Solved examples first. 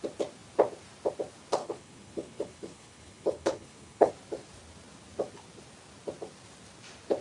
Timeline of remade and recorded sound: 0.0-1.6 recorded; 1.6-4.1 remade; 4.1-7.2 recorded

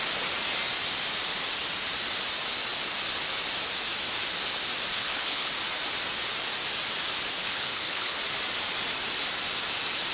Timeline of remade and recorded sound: 0.0-4.9 recorded; 4.9-5.5 remade; 5.5-7.4 recorded; 7.4-8.2 remade; 8.2-10.1 recorded

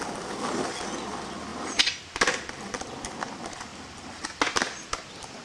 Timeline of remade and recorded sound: 0.0-5.4 recorded

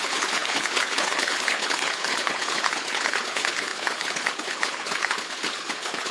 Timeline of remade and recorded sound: 0.0-6.1 remade

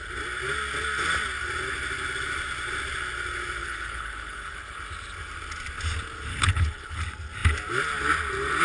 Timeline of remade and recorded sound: 0.0-3.6 recorded; 3.6-4.8 remade; 4.8-6.3 recorded; 6.3-7.0 remade; 7.0-8.6 recorded

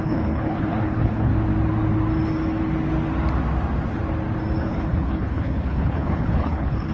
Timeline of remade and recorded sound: 0.0-1.3 remade; 1.3-4.6 recorded; 4.6-6.9 remade

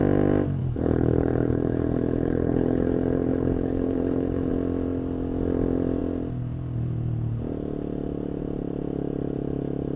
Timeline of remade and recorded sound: 0.0-0.6 recorded; 0.6-4.5 remade; 4.5-10.0 recorded